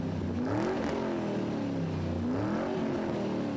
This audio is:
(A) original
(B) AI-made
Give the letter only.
A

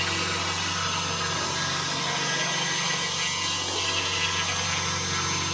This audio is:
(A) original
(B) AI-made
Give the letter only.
A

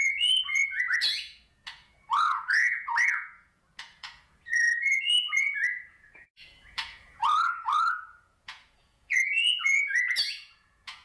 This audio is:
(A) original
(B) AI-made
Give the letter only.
B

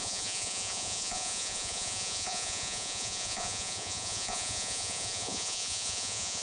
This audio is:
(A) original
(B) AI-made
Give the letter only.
B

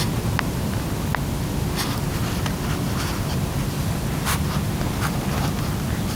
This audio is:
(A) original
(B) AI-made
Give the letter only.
A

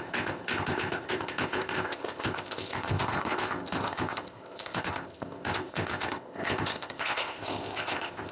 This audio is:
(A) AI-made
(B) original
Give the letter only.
A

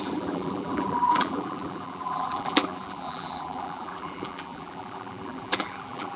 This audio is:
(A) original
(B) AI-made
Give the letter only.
B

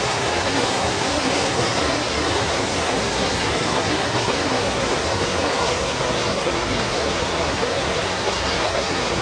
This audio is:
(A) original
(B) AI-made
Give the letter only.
B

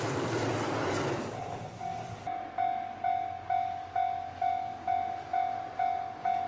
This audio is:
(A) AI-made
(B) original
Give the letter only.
B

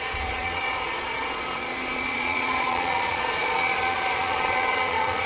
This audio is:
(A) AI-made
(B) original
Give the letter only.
A